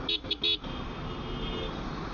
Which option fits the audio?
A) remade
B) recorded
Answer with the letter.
B